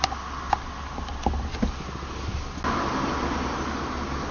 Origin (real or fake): real